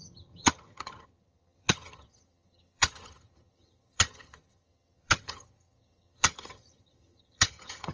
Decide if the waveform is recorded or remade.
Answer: remade